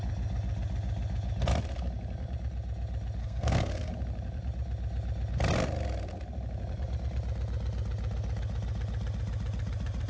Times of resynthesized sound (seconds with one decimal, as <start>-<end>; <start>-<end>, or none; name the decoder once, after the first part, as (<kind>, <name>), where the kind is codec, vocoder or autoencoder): 3.2-3.9 (codec, SNAC)